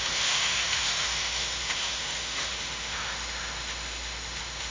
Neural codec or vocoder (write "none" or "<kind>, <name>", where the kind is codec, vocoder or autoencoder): autoencoder, DAC-VAE